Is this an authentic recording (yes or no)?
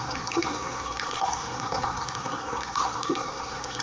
no